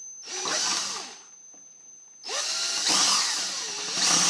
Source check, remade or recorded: recorded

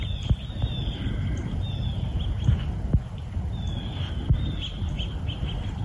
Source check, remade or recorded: recorded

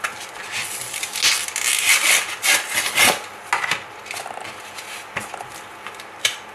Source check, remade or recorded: recorded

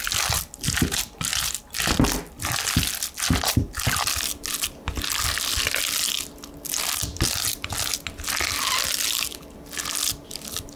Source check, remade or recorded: recorded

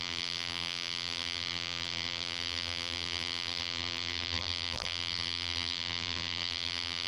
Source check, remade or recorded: remade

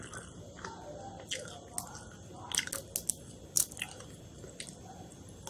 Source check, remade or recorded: recorded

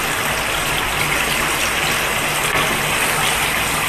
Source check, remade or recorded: recorded